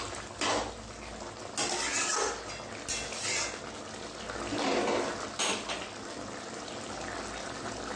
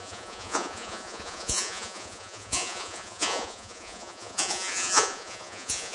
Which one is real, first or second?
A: first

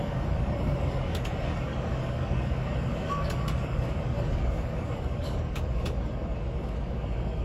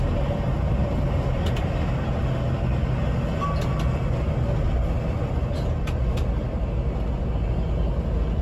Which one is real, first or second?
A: second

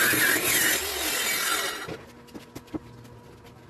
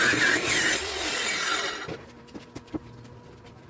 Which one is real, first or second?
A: first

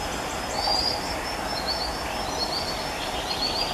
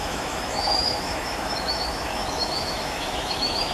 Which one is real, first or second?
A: first